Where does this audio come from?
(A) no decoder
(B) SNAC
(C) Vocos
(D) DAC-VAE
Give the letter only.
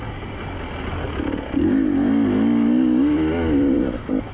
A